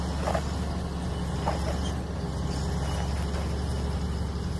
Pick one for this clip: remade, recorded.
recorded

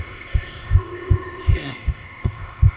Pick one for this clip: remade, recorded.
remade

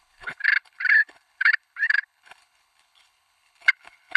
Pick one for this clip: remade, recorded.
remade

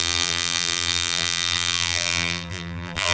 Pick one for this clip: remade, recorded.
remade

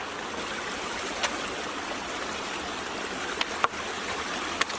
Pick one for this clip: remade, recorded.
recorded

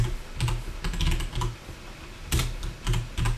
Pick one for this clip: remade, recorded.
recorded